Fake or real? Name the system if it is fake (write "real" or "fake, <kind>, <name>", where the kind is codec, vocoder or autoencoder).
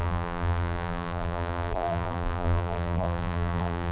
fake, vocoder, BigVGAN v2